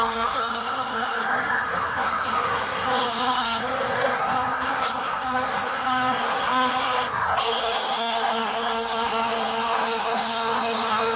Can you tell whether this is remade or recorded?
remade